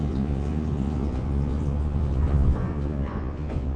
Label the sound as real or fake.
fake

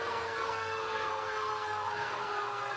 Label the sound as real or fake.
fake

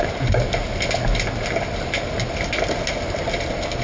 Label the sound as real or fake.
real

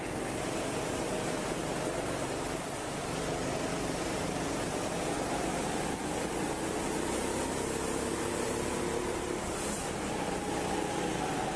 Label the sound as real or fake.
real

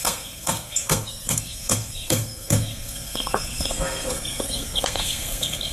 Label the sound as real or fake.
fake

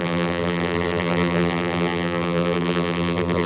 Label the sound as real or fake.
fake